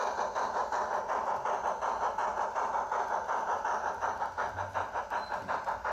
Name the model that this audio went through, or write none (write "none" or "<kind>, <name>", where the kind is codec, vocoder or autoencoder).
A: none